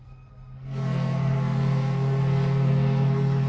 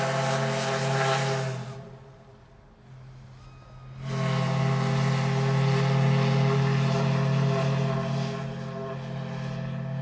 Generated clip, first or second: first